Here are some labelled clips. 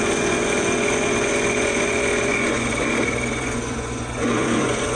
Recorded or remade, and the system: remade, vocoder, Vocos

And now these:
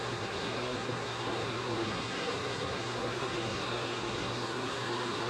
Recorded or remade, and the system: remade, codec, SNAC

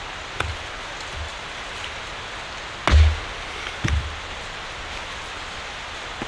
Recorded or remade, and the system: recorded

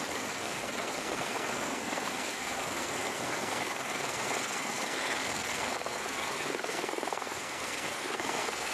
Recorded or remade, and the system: remade, codec, SNAC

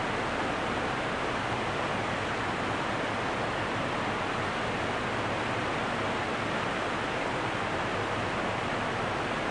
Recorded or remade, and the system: recorded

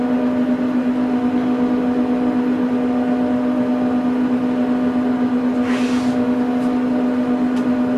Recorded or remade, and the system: recorded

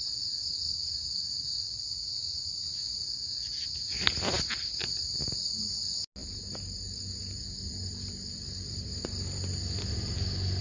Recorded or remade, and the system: recorded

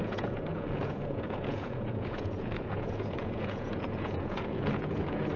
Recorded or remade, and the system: remade, vocoder, Vocos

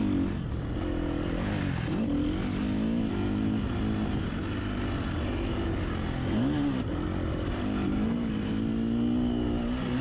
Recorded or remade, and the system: recorded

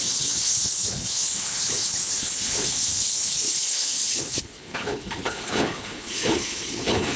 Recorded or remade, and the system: remade, codec, HILCodec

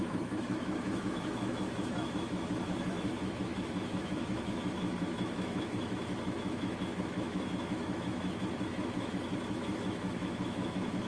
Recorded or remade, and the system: remade, autoencoder, DAC-VAE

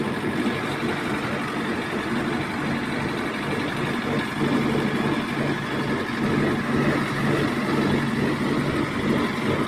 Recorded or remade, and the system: recorded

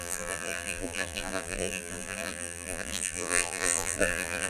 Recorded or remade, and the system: remade, vocoder, BigVGAN v2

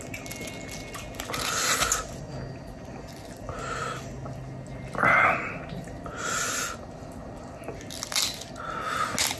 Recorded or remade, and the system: recorded